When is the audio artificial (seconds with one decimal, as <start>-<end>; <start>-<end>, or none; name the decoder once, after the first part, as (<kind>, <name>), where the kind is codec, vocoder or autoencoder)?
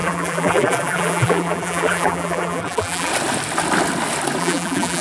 0.0-3.1 (vocoder, BigVGAN v2); 4.4-5.0